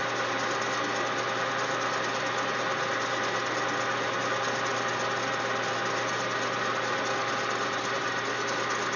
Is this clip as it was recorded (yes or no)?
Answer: yes